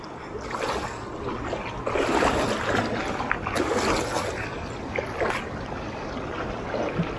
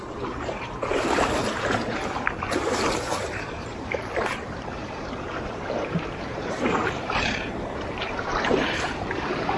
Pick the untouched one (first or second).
first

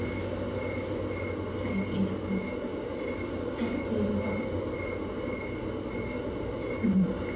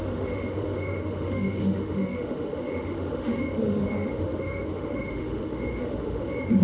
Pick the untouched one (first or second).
first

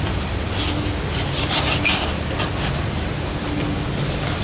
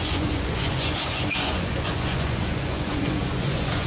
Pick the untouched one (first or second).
first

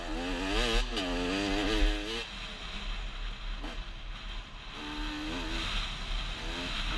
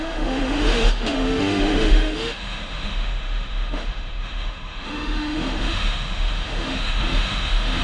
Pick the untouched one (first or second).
first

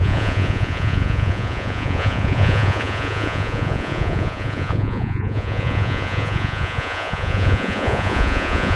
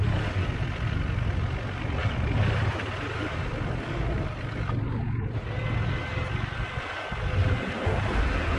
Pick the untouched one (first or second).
second